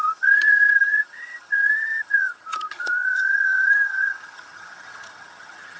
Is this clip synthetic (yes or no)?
yes